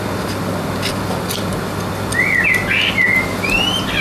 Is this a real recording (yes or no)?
yes